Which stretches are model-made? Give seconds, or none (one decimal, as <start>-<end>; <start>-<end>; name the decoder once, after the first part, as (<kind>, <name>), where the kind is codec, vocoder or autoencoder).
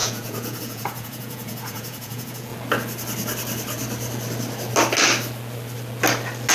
0.0-2.5 (vocoder, Vocos)